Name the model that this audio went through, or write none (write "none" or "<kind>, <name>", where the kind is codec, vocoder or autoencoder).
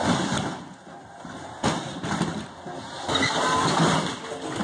none